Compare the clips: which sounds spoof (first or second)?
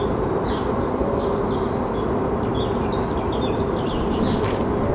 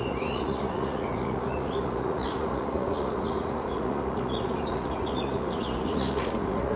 second